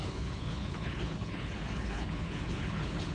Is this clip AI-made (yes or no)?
yes